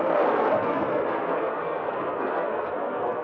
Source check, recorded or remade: remade